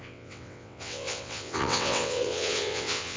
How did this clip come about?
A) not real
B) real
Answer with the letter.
A